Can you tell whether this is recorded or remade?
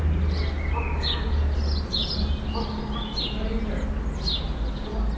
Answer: recorded